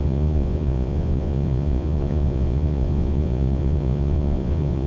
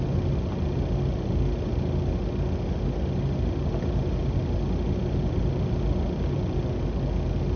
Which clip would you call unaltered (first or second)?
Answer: second